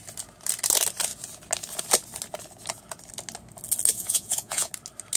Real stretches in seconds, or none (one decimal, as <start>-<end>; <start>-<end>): 0.0-3.9; 4.7-5.2